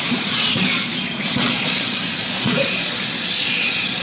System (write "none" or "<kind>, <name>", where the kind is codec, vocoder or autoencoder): vocoder, Vocos